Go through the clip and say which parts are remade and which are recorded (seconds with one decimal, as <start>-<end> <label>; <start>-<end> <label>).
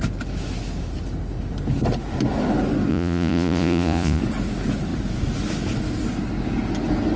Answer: 0.0-2.9 recorded; 2.9-4.2 remade; 4.2-7.2 recorded